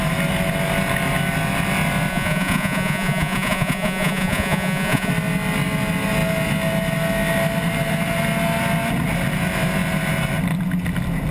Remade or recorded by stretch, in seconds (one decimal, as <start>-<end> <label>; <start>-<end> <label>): 0.0-2.1 recorded; 2.1-5.1 remade; 5.1-11.3 recorded